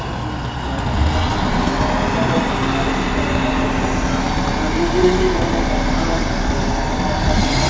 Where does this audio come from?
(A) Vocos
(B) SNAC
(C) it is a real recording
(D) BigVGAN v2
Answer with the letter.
C